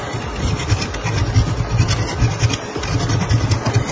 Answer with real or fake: real